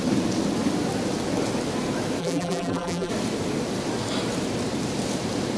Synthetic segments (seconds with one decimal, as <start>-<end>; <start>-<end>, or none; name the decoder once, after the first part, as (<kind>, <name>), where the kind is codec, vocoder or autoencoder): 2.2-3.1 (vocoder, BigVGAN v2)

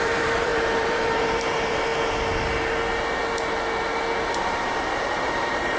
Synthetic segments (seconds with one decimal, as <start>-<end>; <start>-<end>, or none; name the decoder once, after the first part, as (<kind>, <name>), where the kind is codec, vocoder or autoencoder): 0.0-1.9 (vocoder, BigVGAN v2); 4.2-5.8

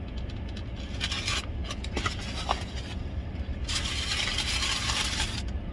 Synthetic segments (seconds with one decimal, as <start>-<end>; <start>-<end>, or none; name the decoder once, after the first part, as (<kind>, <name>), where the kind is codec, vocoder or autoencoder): none

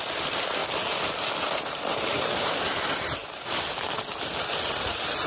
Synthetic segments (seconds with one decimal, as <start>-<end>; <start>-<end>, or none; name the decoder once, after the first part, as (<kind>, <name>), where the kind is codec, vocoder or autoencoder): 0.0-0.6 (vocoder, BigVGAN v2); 1.5-5.3